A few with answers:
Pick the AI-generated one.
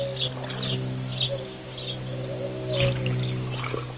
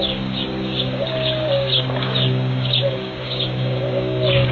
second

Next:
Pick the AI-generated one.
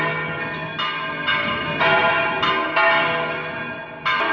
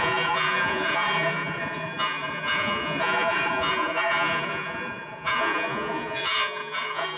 second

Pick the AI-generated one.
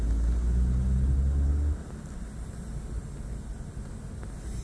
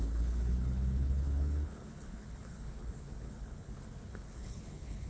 second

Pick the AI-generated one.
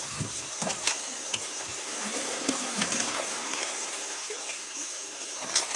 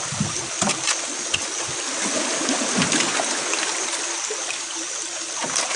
first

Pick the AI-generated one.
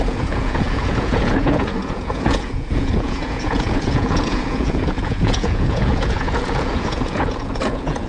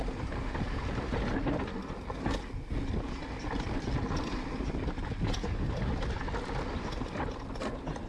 first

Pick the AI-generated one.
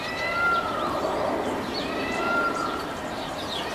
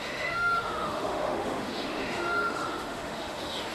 second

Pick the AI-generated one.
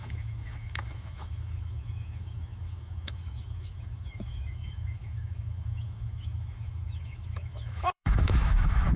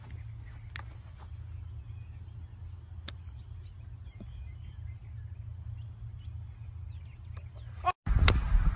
first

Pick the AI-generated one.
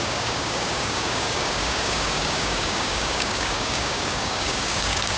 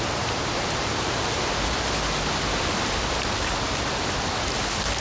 first